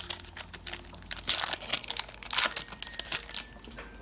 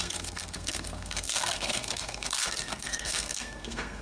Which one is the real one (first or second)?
first